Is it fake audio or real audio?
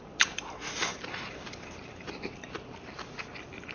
real